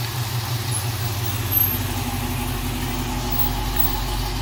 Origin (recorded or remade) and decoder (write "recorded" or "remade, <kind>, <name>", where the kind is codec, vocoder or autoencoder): recorded